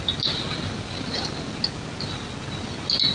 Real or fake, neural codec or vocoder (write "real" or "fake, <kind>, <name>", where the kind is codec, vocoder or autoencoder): real